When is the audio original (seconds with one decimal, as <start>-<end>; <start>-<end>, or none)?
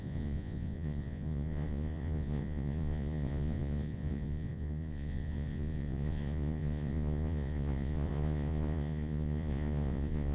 none